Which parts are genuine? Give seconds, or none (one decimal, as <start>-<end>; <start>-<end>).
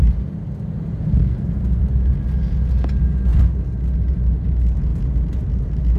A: 0.0-1.2; 1.8-6.0